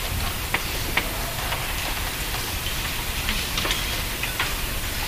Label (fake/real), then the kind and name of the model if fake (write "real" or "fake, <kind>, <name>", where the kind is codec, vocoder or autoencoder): fake, vocoder, BigVGAN v2